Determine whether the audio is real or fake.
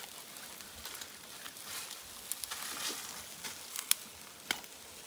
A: real